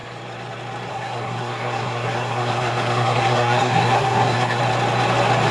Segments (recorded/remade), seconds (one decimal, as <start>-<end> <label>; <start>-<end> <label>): 0.0-0.9 recorded; 0.9-4.6 remade; 4.6-5.5 recorded

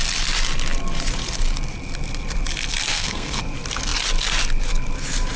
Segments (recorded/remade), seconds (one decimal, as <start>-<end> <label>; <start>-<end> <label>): 0.0-2.9 recorded; 2.9-3.4 remade; 3.4-5.4 recorded

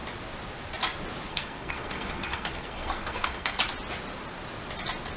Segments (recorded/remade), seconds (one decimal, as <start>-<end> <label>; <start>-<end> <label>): 0.0-1.3 recorded; 1.3-3.6 remade; 3.6-5.2 recorded

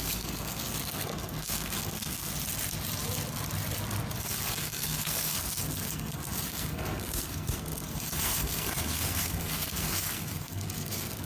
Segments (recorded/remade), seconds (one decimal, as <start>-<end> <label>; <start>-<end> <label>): 0.0-2.3 remade; 2.3-4.2 recorded; 4.2-11.3 remade

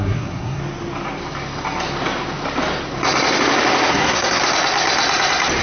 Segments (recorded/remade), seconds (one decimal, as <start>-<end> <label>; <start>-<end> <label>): 0.0-0.6 remade; 0.6-3.9 recorded; 3.9-4.4 remade; 4.4-5.6 recorded

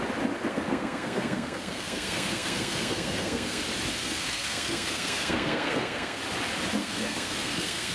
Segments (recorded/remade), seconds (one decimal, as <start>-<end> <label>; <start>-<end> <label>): 0.0-0.5 recorded; 0.5-3.6 remade; 3.6-4.0 recorded; 4.0-6.2 remade; 6.2-6.8 recorded; 6.8-7.9 remade

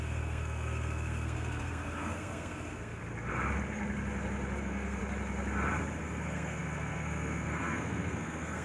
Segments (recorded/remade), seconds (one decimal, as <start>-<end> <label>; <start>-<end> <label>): 0.0-3.0 remade; 3.0-4.6 recorded; 4.6-5.0 remade; 5.0-6.0 recorded; 6.0-8.6 remade

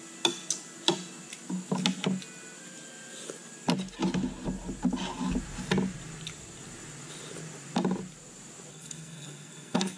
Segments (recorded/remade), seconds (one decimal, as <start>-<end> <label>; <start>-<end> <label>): 0.0-8.7 recorded; 8.7-10.0 remade